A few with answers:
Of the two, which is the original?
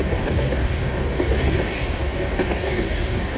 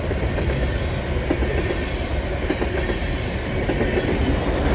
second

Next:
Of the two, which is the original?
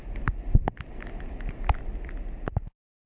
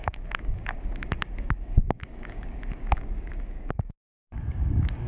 first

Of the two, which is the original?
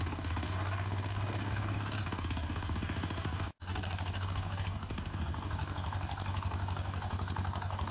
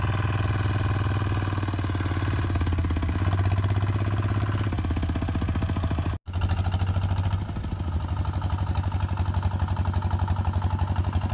second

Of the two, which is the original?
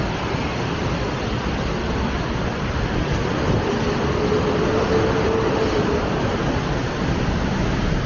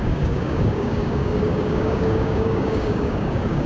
first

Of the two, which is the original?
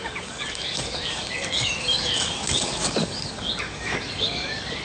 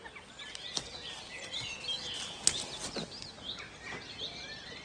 second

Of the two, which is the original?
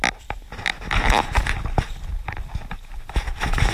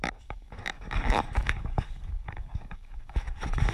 first